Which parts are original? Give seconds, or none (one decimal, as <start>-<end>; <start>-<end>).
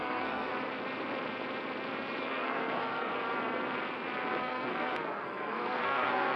0.5-2.2; 3.1-4.4